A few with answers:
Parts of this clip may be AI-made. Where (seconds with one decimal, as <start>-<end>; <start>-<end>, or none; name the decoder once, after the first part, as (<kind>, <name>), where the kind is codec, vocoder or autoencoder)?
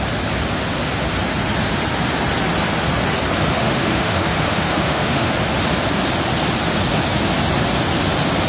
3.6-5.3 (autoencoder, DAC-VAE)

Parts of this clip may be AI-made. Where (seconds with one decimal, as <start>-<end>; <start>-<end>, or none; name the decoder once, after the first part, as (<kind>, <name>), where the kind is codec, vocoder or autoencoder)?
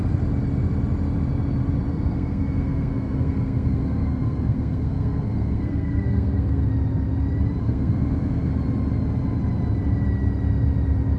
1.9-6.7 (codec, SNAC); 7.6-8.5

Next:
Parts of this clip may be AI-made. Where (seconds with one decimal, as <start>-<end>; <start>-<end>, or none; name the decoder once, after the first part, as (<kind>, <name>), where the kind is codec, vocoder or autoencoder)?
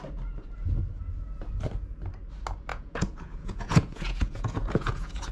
2.7-5.3 (vocoder, Vocos)